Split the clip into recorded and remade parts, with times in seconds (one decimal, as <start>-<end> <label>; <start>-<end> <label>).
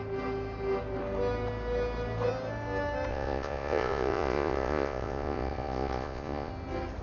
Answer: 0.0-3.1 recorded; 3.1-6.5 remade; 6.5-7.0 recorded